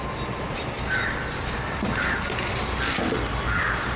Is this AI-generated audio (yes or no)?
no